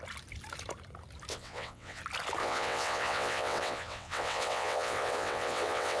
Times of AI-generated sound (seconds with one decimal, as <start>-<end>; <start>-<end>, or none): 1.3-2.0; 2.4-6.0